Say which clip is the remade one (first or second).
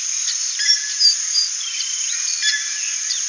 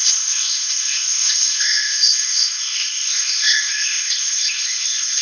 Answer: second